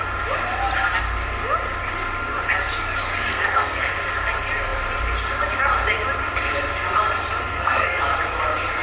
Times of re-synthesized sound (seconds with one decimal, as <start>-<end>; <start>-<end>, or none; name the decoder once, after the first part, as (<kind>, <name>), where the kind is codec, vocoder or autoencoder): 3.3-3.9 (codec, SNAC); 7.5-8.0